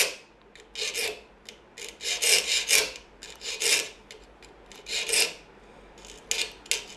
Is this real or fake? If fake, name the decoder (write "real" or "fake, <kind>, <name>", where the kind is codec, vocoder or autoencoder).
real